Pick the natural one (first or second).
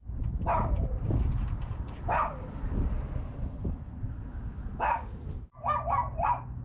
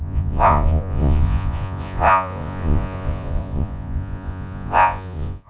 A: first